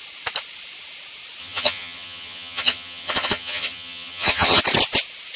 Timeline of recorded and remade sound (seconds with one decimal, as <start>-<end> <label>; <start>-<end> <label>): 0.0-1.4 recorded; 1.4-4.6 remade; 4.6-5.4 recorded